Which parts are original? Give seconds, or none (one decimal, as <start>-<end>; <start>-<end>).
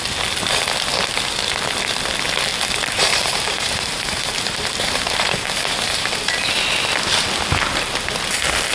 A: 0.0-2.5; 6.5-8.7